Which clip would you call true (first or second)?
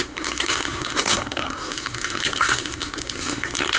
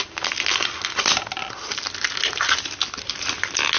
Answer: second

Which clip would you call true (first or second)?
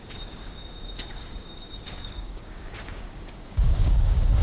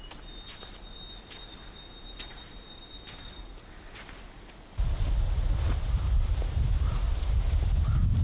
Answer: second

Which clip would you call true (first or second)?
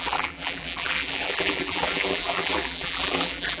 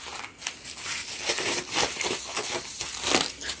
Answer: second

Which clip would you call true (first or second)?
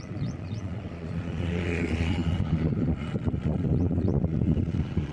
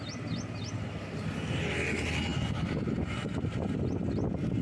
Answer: second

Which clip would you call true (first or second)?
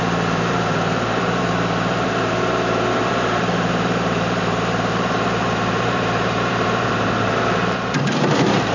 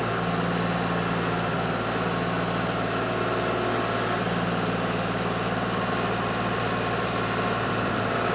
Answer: second